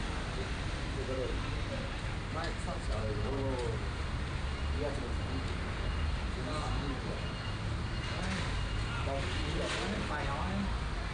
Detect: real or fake real